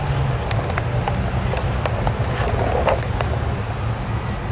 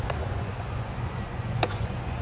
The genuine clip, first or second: first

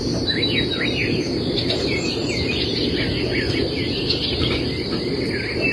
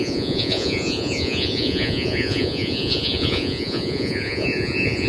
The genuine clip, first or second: first